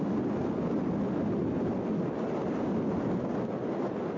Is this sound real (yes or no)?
yes